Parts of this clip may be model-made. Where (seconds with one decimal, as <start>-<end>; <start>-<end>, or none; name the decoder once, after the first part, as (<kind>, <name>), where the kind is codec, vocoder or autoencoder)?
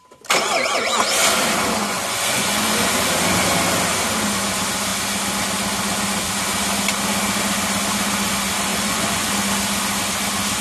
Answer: 1.8-2.9 (vocoder, Vocos); 8.7-9.3